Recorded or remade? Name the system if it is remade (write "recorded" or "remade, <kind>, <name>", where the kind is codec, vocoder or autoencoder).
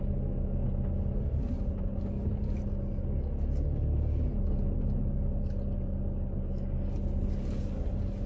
recorded